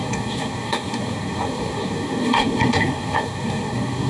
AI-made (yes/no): yes